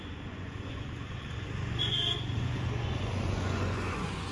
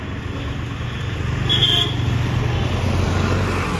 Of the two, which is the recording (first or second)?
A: second